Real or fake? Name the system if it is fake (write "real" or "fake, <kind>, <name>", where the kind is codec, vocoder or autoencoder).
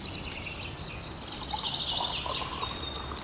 real